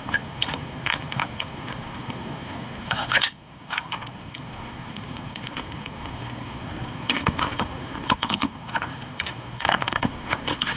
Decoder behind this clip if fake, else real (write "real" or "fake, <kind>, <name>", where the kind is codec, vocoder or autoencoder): fake, codec, SNAC